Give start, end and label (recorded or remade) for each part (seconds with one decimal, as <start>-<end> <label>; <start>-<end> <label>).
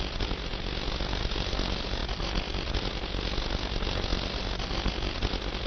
0.0-5.7 recorded